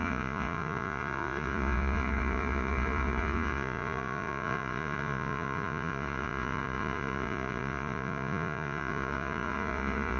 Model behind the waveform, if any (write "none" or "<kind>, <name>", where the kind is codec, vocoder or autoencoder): vocoder, Vocos